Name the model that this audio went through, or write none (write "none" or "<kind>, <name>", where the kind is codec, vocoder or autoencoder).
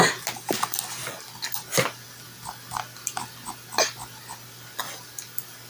none